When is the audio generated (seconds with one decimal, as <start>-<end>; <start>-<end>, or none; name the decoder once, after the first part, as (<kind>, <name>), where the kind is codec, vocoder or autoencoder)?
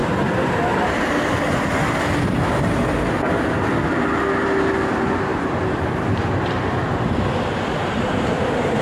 0.0-1.3 (vocoder, BigVGAN v2); 5.3-7.0; 7.8-8.4